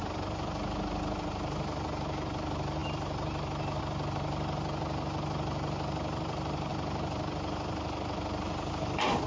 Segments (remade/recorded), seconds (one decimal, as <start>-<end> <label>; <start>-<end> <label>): 0.0-9.3 recorded